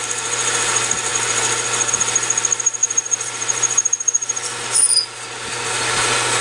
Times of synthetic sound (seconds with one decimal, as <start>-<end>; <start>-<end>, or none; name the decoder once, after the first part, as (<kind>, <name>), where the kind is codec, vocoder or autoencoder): none